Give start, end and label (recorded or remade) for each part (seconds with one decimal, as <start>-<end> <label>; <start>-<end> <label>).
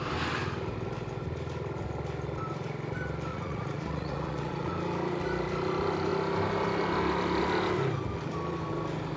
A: 0.0-3.3 recorded; 3.3-4.7 remade; 4.7-9.2 recorded